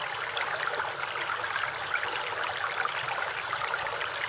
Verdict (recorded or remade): recorded